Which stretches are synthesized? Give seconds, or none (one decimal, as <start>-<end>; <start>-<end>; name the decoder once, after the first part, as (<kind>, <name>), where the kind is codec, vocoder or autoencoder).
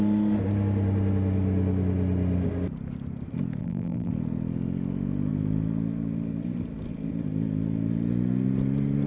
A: 3.6-4.1 (vocoder, BigVGAN v2)